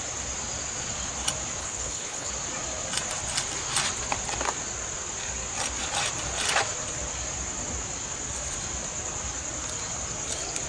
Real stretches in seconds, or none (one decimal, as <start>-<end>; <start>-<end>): 0.0-1.6; 2.3-10.7